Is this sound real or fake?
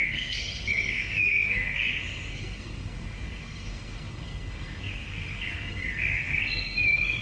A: fake